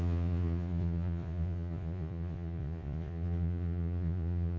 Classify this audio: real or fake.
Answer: fake